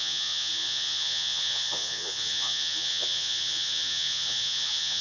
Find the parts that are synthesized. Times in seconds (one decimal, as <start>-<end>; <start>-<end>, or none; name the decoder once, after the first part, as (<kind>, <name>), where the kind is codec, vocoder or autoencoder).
0.0-5.0 (vocoder, Vocos)